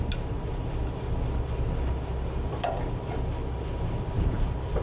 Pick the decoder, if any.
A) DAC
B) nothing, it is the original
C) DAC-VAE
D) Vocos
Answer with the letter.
B